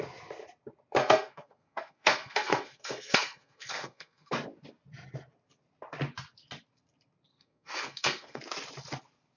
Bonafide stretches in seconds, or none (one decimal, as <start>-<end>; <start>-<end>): 0.0-1.0; 4.3-7.3; 8.4-9.4